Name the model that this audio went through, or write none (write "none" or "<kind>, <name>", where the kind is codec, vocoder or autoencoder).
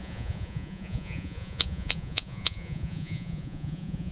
vocoder, Vocos